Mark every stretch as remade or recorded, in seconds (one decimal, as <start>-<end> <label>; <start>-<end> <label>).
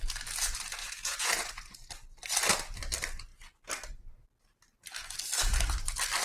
0.0-0.8 recorded; 0.8-1.9 remade; 1.9-6.2 recorded